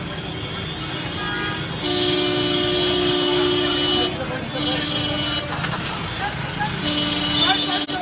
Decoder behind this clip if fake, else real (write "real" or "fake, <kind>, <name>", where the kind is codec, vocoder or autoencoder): real